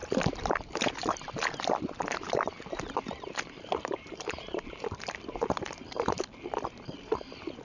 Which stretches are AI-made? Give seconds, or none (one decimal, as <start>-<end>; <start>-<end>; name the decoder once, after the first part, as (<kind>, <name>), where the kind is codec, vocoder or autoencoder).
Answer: 0.0-0.9 (vocoder, BigVGAN v2); 2.0-6.6

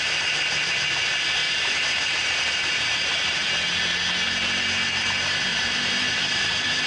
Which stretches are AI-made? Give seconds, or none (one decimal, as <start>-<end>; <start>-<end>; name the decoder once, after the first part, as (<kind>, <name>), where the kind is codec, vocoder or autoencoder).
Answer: 1.4-3.4 (vocoder, BigVGAN v2); 5.5-6.9

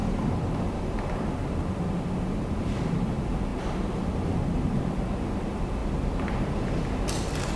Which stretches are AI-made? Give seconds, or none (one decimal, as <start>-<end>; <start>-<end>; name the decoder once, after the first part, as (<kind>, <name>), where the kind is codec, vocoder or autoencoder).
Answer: none